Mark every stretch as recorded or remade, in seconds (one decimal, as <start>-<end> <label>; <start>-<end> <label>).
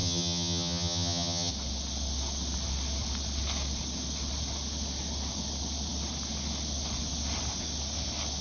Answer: 0.0-1.5 remade; 1.5-8.4 recorded